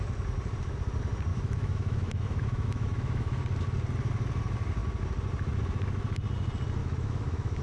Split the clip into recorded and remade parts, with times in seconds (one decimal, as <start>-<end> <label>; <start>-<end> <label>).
0.0-1.3 recorded; 1.3-3.4 remade; 3.4-6.8 recorded; 6.8-7.6 remade